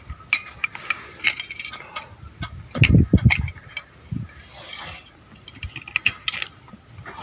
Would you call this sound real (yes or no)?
yes